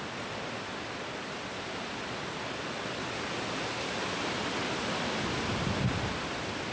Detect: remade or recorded recorded